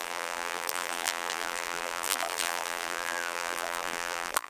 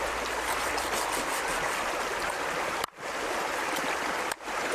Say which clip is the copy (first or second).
first